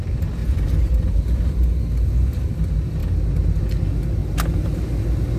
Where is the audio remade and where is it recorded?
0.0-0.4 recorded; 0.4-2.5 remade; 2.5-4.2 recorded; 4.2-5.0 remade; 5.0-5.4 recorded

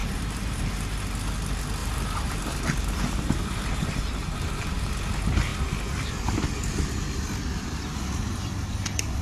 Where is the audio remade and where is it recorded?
0.0-1.0 remade; 1.0-1.8 recorded; 1.8-4.9 remade; 4.9-9.2 recorded

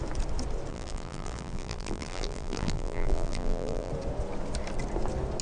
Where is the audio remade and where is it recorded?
0.0-0.7 recorded; 0.7-3.9 remade; 3.9-5.4 recorded

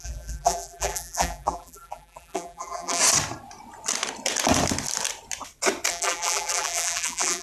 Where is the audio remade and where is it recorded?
0.0-3.0 remade; 3.0-5.9 recorded; 5.9-7.4 remade

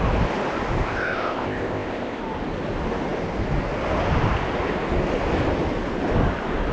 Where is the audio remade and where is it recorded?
0.0-0.8 recorded; 0.8-2.2 remade; 2.2-6.7 recorded

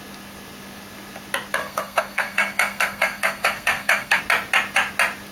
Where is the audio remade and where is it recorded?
0.0-1.6 recorded; 1.6-4.2 remade; 4.2-5.3 recorded